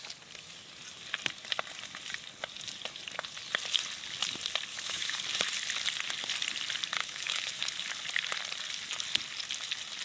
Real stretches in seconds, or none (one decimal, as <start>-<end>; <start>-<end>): 0.0-4.7; 5.2-7.0; 7.6-10.0